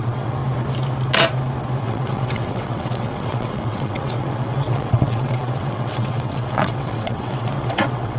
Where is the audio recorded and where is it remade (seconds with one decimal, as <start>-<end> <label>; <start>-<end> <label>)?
0.0-0.4 remade; 0.4-1.8 recorded; 1.8-8.2 remade